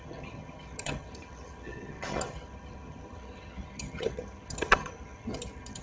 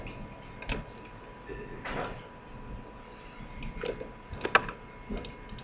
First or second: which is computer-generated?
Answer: first